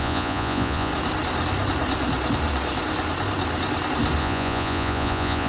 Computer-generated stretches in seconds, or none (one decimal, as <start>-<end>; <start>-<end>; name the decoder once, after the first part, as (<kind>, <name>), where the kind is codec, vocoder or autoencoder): 0.0-0.9 (vocoder, Vocos); 4.2-5.5